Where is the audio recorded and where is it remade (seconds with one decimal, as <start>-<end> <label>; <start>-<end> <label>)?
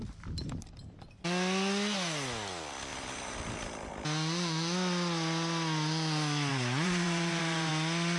0.0-2.9 recorded; 2.9-3.9 remade; 3.9-6.5 recorded; 6.5-7.7 remade; 7.7-8.2 recorded